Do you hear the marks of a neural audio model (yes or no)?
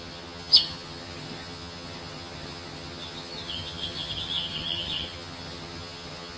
yes